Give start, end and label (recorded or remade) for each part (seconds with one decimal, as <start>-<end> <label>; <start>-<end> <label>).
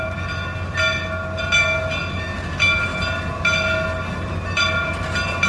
0.0-5.5 recorded